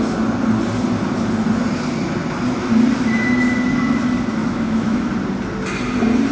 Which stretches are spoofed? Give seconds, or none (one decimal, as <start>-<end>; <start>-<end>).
4.4-5.1

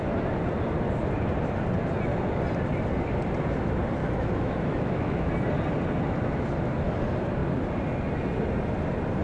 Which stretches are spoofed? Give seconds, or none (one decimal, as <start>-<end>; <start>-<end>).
4.0-5.3

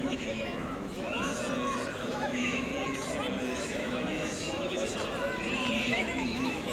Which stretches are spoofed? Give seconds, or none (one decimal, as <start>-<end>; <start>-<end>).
0.0-1.3; 2.0-2.7; 3.6-4.9; 5.9-6.7

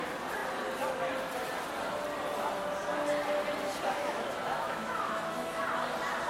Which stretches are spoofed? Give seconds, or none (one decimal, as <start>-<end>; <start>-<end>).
4.0-5.6

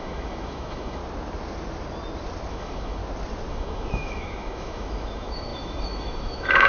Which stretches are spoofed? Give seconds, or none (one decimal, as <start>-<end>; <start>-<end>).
0.0-1.0; 2.5-3.0; 3.5-6.7

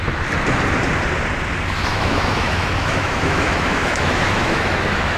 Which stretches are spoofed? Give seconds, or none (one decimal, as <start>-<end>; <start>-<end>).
1.9-5.2